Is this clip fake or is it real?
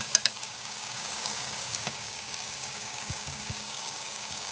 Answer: fake